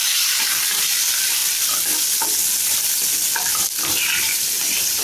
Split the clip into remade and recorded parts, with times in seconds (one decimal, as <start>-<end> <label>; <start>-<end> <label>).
0.0-1.4 remade; 1.4-4.2 recorded; 4.2-5.0 remade